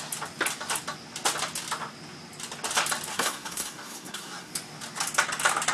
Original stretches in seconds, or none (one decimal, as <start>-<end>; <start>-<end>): 0.0-3.1; 4.5-5.7